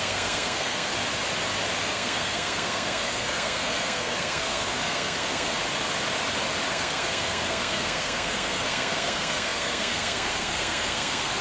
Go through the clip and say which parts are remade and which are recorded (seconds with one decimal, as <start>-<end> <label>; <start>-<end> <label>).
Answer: 0.0-0.9 remade; 0.9-1.8 recorded; 1.8-5.6 remade; 5.6-6.7 recorded; 6.7-11.4 remade